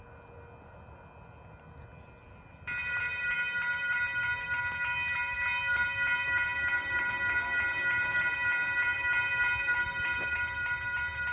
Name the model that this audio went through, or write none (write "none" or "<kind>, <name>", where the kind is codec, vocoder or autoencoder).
none